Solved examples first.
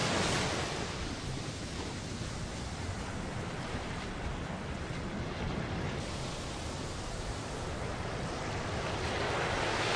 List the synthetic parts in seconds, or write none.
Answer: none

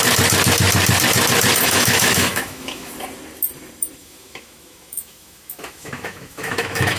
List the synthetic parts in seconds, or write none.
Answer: 1.6-2.9 (autoencoder, DAC-VAE); 4.0-7.0

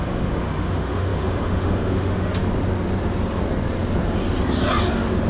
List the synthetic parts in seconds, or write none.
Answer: 0.0-2.4 (autoencoder, DAC-VAE)